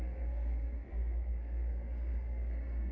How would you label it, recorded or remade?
remade